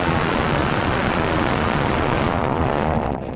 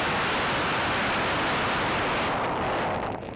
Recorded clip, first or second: second